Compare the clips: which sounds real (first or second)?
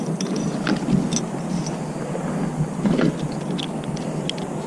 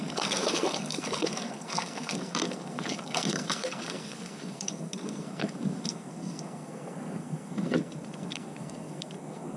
first